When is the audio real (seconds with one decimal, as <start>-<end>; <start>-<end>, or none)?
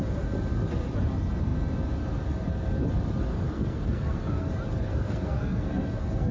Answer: 0.0-3.3; 4.5-4.9